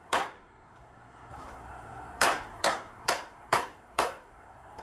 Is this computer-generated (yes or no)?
yes